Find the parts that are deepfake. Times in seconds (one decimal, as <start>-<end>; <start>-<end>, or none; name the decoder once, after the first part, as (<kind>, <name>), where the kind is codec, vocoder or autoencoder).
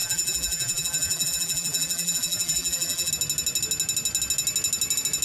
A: 0.0-3.1 (vocoder, BigVGAN v2)